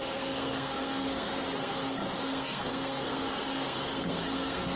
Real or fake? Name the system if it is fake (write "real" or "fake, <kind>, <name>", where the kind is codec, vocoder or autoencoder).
fake, codec, SNAC